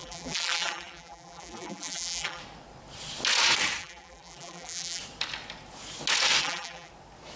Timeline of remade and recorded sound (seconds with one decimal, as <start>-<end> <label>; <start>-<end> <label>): 0.0-2.4 remade; 2.4-3.8 recorded; 3.8-5.0 remade; 5.0-6.4 recorded; 6.4-6.9 remade; 6.9-7.4 recorded